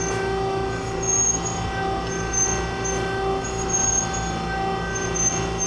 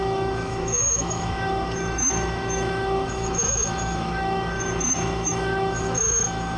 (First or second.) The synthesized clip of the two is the second